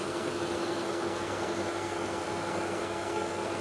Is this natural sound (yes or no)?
no